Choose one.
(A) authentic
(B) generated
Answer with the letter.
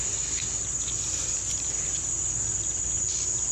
A